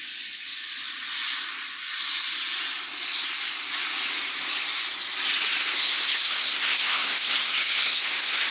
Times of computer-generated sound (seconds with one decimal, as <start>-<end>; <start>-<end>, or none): 5.6-8.5